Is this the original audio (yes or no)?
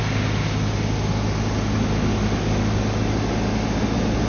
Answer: yes